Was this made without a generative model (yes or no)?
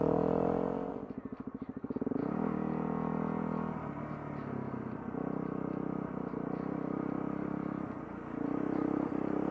yes